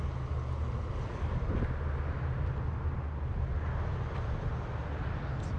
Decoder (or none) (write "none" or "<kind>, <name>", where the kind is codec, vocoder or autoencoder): none